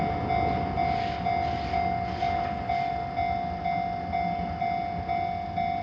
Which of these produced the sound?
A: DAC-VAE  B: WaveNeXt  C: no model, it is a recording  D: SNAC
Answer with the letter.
C